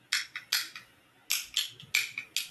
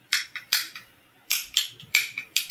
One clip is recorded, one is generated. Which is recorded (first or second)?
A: first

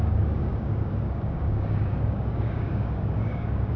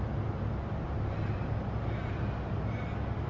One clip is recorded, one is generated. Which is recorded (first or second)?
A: second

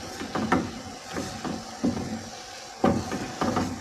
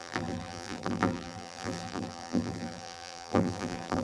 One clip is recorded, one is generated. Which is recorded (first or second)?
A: first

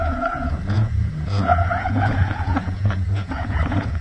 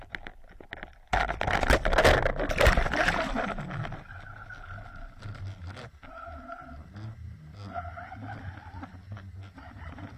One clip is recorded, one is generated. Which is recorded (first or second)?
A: second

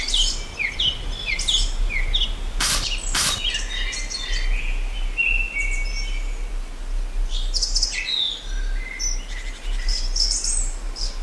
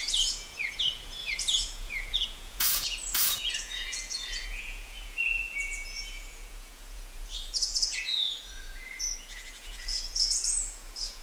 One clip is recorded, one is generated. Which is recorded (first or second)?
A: first